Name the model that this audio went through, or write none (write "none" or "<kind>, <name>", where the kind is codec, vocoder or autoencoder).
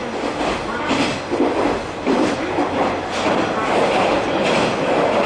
none